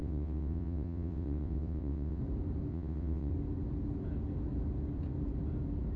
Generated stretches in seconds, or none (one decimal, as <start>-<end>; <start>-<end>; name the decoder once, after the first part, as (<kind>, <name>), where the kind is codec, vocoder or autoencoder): 0.0-2.2 (vocoder, WaveNeXt); 2.7-3.3